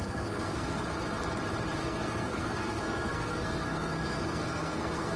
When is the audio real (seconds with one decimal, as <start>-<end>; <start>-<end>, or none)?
0.9-1.8